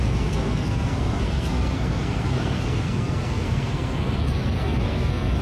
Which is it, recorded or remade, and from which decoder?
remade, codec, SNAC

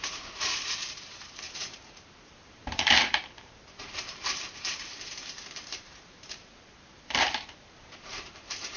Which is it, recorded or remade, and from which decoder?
remade, vocoder, BigVGAN v2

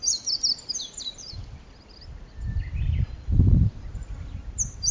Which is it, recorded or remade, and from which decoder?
remade, vocoder, BigVGAN v2